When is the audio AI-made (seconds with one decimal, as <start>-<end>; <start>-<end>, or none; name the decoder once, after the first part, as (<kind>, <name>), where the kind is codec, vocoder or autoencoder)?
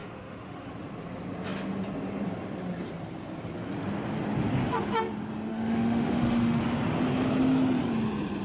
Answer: 0.0-0.7 (autoencoder, DAC-VAE); 5.5-6.6